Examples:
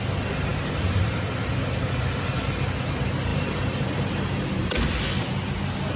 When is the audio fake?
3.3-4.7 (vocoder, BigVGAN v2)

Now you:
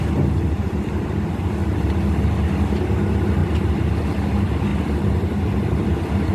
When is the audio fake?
1.6-2.2 (vocoder, BigVGAN v2); 3.4-4.0; 4.7-5.4